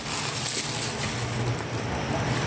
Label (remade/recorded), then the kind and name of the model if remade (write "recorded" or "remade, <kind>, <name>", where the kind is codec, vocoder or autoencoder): recorded